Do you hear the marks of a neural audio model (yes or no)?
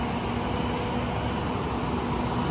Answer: no